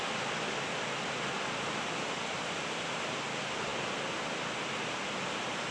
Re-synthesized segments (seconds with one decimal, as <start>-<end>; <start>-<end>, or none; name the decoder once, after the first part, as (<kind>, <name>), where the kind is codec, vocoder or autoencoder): none